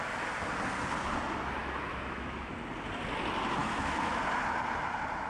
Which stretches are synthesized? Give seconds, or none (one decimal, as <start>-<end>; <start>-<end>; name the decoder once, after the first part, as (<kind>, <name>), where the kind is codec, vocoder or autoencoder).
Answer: 1.6-2.5 (autoencoder, DAC-VAE); 3.6-4.2